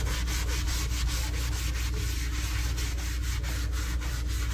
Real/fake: real